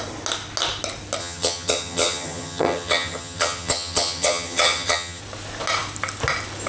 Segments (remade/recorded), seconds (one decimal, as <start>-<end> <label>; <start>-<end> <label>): 0.0-1.2 recorded; 1.2-5.2 remade; 5.2-6.7 recorded